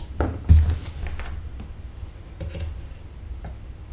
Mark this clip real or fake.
real